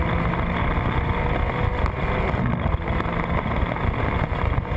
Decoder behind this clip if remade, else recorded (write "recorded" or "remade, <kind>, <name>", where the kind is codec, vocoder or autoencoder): recorded